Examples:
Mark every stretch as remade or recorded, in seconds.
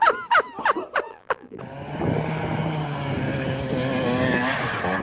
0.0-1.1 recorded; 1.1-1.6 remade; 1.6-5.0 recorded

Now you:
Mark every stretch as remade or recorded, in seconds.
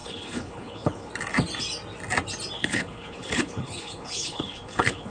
0.0-1.1 remade; 1.1-2.6 recorded; 2.6-5.1 remade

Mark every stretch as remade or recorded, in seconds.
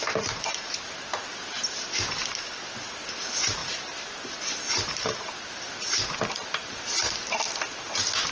0.0-8.3 recorded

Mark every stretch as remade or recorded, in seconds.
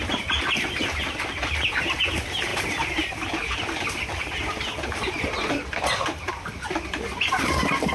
0.0-7.9 recorded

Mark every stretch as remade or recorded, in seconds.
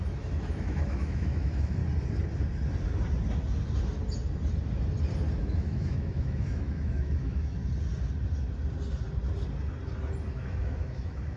0.0-1.8 remade; 1.8-5.4 recorded; 5.4-7.6 remade; 7.6-10.3 recorded; 10.3-11.4 remade